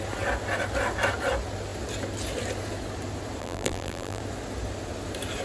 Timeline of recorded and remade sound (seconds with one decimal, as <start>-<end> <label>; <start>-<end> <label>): 0.0-3.4 recorded; 3.4-4.2 remade; 4.2-5.4 recorded